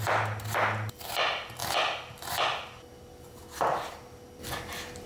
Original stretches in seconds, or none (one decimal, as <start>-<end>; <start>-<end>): 0.0-5.1